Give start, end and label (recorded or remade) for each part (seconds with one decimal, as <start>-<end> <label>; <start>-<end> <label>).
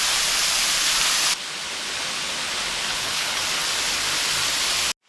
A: 0.0-2.9 recorded; 2.9-3.4 remade; 3.4-5.1 recorded